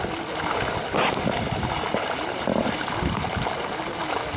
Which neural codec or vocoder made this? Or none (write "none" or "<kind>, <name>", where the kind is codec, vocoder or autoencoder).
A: none